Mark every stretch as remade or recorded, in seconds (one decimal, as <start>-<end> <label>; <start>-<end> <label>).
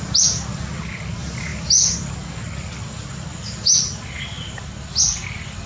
0.0-5.7 recorded